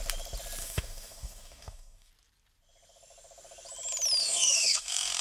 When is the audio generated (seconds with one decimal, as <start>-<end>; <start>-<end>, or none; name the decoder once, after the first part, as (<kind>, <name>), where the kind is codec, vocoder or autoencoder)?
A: 0.6-2.1 (codec, DAC); 4.2-5.2